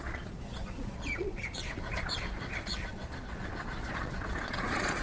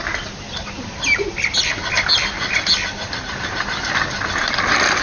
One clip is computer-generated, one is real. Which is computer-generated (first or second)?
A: first